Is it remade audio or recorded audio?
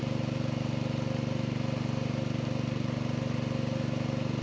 recorded